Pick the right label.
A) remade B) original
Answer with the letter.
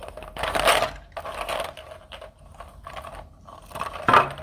B